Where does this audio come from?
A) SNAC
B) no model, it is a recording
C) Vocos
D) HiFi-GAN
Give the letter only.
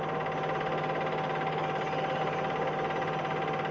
B